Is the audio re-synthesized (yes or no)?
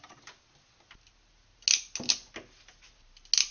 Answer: no